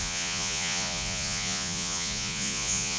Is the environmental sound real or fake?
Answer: fake